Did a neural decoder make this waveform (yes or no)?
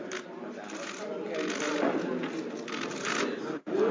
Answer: no